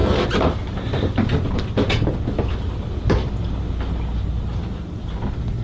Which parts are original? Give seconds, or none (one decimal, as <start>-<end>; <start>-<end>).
0.0-5.6